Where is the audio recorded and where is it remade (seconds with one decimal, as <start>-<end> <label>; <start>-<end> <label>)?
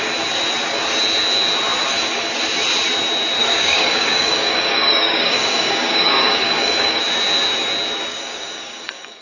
0.0-3.4 recorded; 3.4-7.0 remade; 7.0-8.1 recorded; 8.1-9.2 remade